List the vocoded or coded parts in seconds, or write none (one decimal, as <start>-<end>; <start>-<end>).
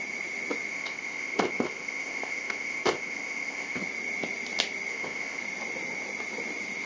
0.7-3.8; 4.9-5.4